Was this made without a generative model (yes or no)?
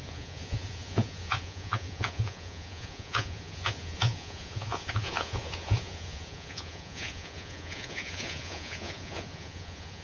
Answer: no